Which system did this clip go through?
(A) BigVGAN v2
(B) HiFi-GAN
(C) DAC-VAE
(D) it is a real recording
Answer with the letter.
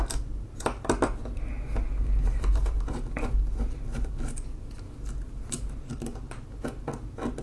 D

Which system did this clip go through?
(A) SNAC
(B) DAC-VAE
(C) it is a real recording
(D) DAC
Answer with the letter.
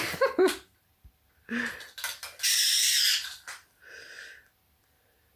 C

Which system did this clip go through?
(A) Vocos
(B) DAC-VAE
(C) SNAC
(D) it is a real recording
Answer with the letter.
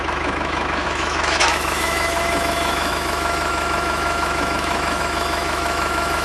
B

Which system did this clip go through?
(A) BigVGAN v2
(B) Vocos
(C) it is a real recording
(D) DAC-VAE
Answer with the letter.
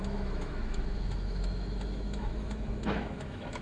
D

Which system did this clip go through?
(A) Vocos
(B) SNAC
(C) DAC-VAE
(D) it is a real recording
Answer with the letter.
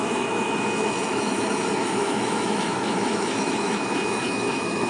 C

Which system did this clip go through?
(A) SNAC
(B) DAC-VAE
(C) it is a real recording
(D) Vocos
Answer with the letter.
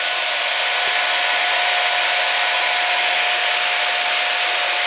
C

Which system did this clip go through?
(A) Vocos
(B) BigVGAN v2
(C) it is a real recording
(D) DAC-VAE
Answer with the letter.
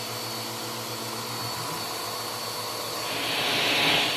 C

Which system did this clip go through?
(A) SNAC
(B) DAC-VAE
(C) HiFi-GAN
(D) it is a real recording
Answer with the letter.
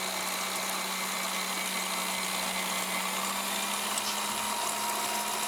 D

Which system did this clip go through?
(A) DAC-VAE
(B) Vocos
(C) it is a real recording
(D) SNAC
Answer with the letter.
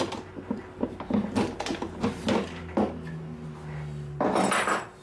C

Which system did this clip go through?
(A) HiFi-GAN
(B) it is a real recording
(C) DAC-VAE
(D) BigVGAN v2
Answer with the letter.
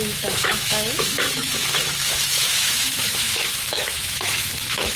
C